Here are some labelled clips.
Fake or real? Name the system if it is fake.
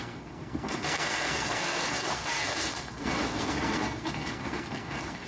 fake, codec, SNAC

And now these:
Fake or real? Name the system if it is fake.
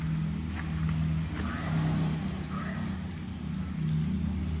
real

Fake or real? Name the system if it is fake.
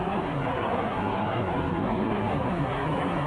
fake, codec, SNAC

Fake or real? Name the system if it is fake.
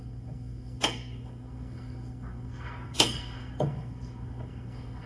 fake, codec, SNAC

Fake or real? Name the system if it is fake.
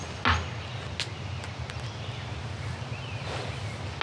real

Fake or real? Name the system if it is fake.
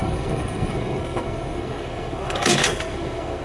fake, codec, SNAC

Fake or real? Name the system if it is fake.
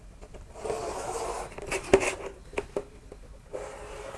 real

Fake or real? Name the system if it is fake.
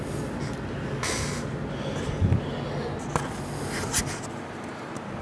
real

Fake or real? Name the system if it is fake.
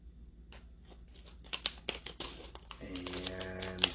real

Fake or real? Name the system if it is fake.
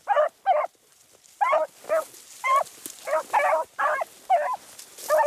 real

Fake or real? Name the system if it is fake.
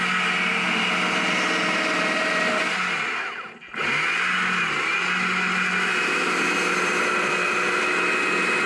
real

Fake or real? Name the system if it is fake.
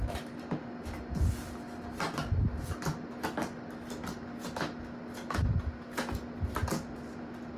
real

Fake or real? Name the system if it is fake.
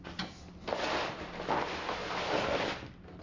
real